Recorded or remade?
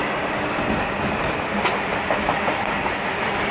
recorded